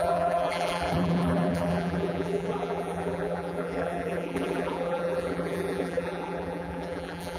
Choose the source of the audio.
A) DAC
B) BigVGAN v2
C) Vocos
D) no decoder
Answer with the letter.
B